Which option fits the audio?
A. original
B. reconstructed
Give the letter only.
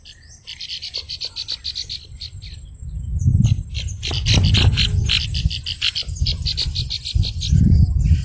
A